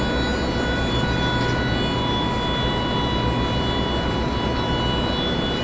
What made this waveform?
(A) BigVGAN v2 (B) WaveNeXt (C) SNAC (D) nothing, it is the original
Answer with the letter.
D